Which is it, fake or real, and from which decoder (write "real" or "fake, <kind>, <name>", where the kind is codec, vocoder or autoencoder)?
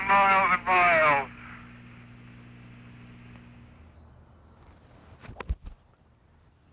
real